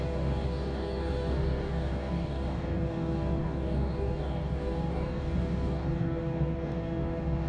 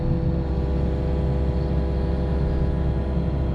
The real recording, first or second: second